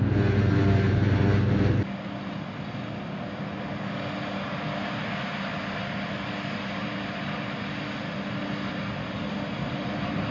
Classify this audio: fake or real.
real